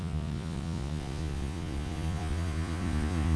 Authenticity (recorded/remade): remade